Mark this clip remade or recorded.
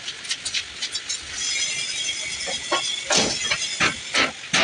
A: recorded